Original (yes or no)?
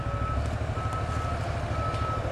yes